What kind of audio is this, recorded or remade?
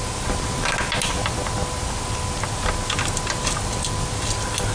recorded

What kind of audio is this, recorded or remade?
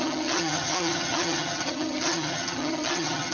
remade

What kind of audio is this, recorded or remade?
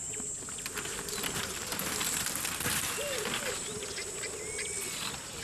recorded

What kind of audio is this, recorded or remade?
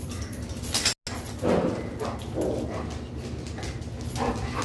recorded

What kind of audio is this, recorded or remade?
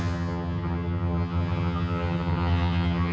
remade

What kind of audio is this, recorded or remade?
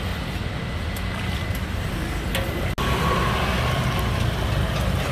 recorded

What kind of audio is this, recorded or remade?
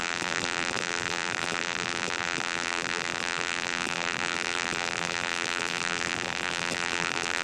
remade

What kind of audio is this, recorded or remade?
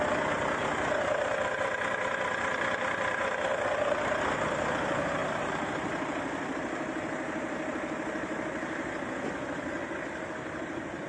recorded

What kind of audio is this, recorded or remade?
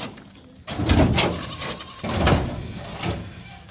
remade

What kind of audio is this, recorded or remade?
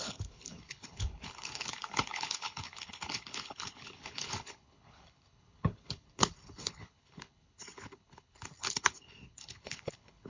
remade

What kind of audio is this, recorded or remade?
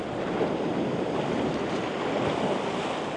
recorded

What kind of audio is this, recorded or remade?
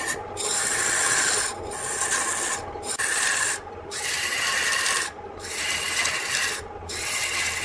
recorded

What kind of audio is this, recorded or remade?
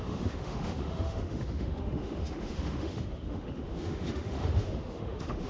remade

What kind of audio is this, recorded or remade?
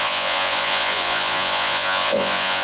remade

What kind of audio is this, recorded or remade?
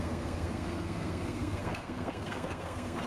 remade